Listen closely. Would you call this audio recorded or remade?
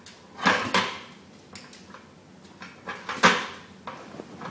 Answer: recorded